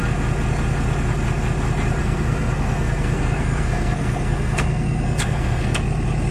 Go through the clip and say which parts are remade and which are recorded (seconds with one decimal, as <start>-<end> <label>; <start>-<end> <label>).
0.0-2.0 recorded; 2.0-5.8 remade; 5.8-6.3 recorded